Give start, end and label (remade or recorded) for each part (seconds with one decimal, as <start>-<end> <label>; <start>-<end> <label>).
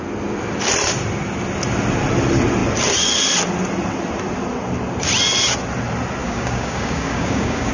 0.0-6.2 recorded; 6.2-7.7 remade